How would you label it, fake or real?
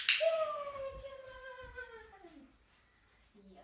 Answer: real